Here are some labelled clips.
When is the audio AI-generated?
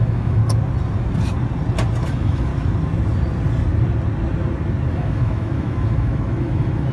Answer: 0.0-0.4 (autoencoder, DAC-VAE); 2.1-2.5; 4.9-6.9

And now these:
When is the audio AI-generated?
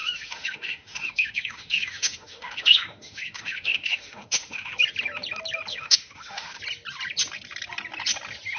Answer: 0.0-4.8 (autoencoder, DAC-VAE); 5.7-6.6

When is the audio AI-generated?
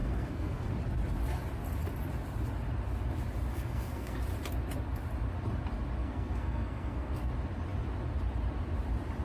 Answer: 0.0-0.7 (codec, SNAC); 3.5-4.2; 6.0-7.3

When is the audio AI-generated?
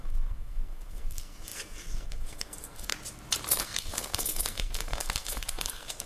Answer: 0.0-2.9 (codec, SNAC); 3.6-6.1